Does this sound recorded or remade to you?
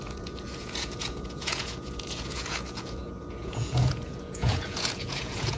remade